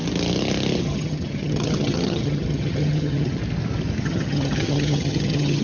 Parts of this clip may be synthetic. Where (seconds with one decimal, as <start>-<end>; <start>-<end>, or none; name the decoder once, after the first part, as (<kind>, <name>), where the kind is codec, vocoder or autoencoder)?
0.8-3.4 (vocoder, HiFi-GAN); 4.0-5.6